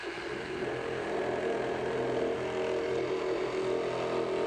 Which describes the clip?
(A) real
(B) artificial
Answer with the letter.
A